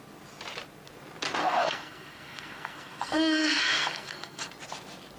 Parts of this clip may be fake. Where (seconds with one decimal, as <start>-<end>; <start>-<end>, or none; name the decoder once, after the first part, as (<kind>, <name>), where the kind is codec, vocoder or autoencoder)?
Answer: 1.4-4.5 (codec, SNAC)